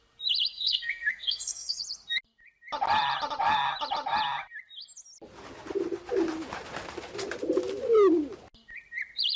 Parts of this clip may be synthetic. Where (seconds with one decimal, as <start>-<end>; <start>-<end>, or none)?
0.5-1.8